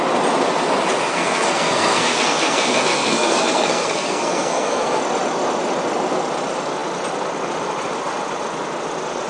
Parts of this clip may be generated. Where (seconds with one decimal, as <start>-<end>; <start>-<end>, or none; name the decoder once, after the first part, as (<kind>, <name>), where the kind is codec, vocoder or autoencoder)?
1.1-5.0 (codec, SNAC)